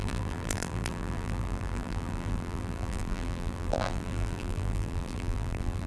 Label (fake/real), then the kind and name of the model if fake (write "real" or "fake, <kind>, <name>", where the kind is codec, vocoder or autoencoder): fake, vocoder, BigVGAN v2